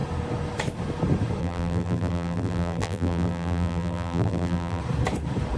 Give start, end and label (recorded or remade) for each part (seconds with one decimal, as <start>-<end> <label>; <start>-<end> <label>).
0.0-1.4 recorded; 1.4-4.8 remade; 4.8-5.6 recorded

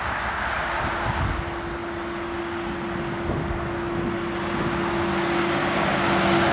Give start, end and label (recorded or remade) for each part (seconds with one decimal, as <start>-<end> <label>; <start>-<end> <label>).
0.0-6.5 recorded

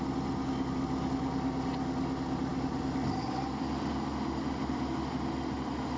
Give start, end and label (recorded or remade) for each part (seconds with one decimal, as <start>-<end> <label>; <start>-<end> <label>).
0.0-6.0 recorded

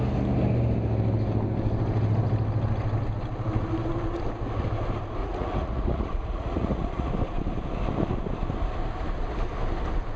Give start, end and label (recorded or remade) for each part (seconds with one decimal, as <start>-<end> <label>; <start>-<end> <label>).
0.0-5.2 recorded; 5.2-7.1 remade; 7.1-10.2 recorded

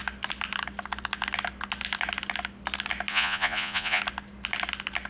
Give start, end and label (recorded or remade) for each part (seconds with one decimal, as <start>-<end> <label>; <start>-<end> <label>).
0.0-3.1 recorded; 3.1-4.0 remade; 4.0-5.1 recorded